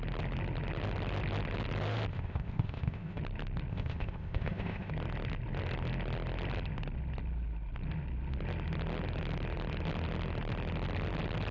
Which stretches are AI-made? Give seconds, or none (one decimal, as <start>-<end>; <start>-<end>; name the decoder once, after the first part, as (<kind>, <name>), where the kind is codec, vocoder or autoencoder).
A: 2.1-3.2 (codec, ZipCodec); 3.7-4.9